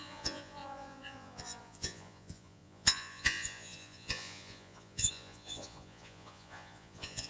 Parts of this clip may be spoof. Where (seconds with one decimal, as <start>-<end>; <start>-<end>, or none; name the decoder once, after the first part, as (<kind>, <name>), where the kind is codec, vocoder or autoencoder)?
0.0-7.3 (vocoder, Vocos)

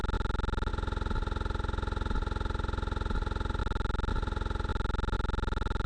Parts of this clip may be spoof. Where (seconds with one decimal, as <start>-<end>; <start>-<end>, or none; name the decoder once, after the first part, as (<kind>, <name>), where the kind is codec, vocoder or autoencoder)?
0.7-3.6 (vocoder, Vocos); 4.1-4.7

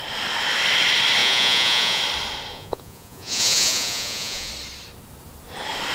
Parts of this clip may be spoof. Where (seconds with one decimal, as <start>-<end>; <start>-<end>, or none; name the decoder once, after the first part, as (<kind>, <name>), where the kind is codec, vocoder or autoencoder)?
1.2-2.0 (vocoder, Vocos); 2.5-4.5